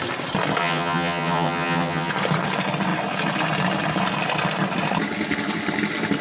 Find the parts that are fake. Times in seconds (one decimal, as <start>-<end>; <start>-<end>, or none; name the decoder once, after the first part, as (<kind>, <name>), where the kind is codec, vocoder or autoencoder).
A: 0.6-2.1 (vocoder, HiFi-GAN)